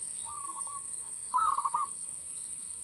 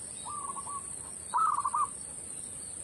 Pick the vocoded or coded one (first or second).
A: first